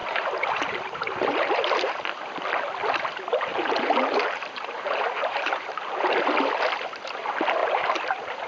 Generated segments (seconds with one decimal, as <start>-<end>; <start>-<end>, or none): 0.0-2.0; 3.5-6.1; 7.6-8.5